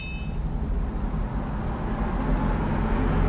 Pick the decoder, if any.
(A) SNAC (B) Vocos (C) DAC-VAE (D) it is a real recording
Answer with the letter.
D